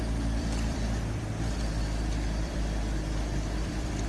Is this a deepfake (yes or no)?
yes